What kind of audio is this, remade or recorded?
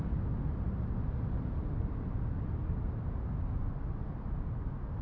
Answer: recorded